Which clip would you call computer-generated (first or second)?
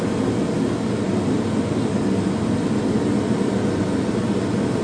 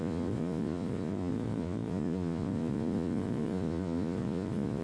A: second